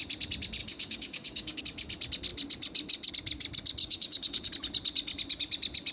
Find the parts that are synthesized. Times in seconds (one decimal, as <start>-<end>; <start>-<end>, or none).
0.6-1.6; 3.8-4.5